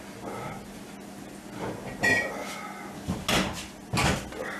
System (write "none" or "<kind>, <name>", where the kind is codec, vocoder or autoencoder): none